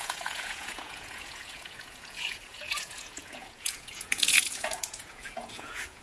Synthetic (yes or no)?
yes